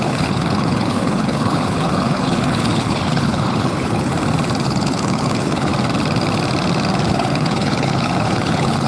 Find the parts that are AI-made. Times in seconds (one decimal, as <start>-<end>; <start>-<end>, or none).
0.0-4.1; 4.6-5.7; 7.1-8.9